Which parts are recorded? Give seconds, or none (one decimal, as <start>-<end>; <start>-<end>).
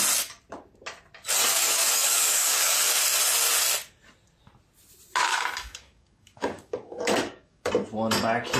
0.0-1.5; 3.0-5.3; 7.7-8.6